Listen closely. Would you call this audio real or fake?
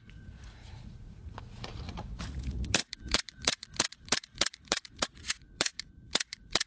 fake